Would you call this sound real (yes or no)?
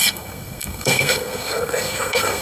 no